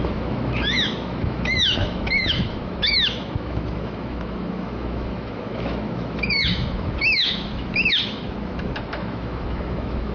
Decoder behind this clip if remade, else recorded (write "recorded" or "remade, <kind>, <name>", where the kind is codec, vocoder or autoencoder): remade, autoencoder, DAC-VAE